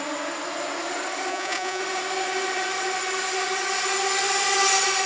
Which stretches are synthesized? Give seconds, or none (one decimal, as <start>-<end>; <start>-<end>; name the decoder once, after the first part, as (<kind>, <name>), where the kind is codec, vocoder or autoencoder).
1.3-1.8 (vocoder, Vocos)